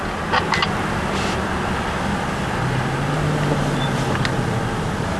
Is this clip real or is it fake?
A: real